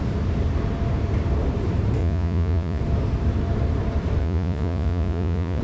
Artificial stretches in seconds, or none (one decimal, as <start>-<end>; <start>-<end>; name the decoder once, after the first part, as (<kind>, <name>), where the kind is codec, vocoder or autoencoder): 2.0-2.8 (vocoder, Vocos); 4.2-5.6